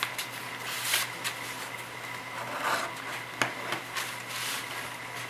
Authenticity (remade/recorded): recorded